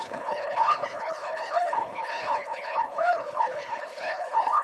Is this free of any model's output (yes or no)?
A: no